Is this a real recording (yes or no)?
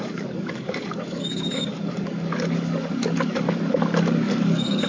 no